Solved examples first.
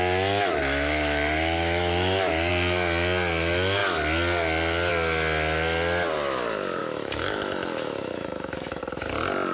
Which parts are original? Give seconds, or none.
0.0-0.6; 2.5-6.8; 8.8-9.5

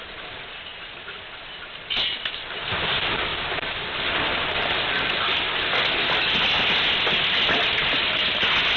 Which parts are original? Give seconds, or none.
0.0-8.8

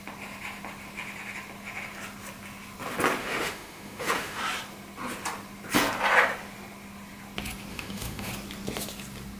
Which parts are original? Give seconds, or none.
0.0-3.2; 4.4-7.7; 8.3-9.4

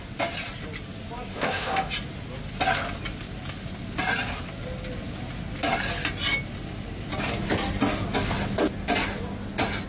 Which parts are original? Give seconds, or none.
0.0-1.3; 1.9-9.9

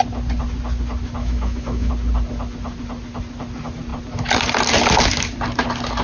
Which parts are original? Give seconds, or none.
0.0-1.2; 1.9-6.0